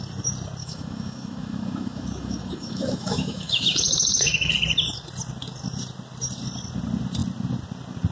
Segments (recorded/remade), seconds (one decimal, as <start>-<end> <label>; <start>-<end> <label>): 0.0-0.6 recorded; 0.6-4.5 remade; 4.5-8.1 recorded